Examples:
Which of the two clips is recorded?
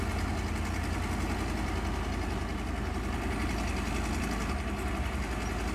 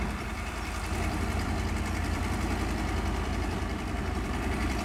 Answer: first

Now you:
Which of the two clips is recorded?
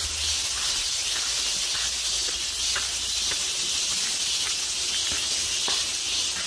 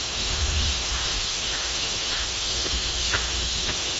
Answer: first